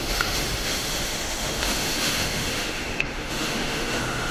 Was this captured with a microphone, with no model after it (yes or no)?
no